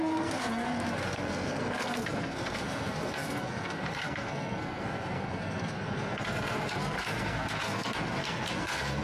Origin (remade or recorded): remade